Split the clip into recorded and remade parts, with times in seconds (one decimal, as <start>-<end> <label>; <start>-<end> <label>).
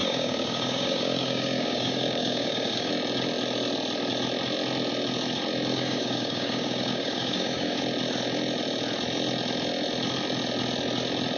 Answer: 0.0-2.9 remade; 2.9-5.7 recorded; 5.7-7.8 remade; 7.8-11.4 recorded